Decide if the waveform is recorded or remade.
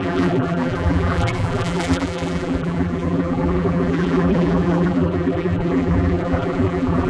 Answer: remade